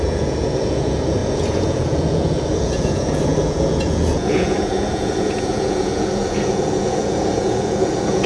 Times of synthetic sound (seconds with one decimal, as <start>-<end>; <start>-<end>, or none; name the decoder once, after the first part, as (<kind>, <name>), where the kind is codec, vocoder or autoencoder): 0.0-8.3 (vocoder, Vocos)